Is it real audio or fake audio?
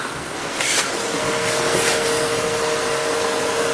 fake